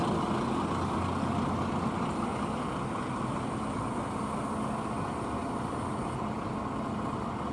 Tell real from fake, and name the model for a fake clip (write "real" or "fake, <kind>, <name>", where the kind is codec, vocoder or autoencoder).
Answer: real